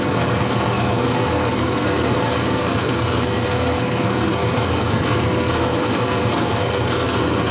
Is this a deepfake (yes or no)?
yes